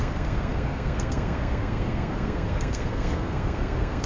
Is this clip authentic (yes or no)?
no